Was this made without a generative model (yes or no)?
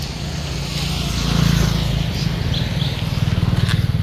yes